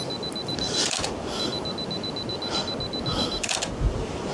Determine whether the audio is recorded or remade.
recorded